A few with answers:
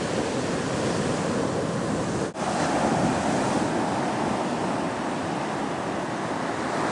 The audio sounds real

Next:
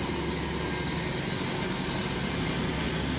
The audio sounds real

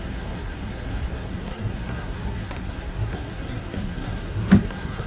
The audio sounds fake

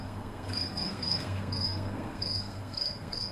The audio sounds fake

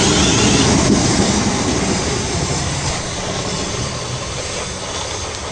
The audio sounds real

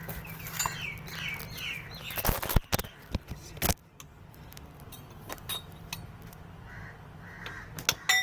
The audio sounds real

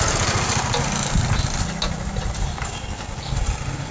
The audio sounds real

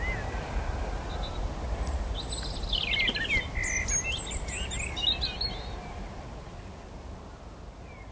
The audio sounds real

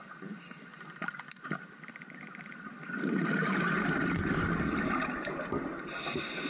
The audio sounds real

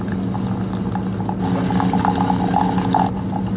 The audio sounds real